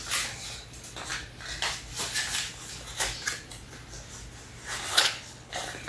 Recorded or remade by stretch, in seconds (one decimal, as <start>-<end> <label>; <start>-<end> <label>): 0.0-4.9 recorded; 4.9-5.5 remade; 5.5-5.9 recorded